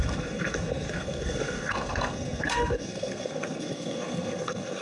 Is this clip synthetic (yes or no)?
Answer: yes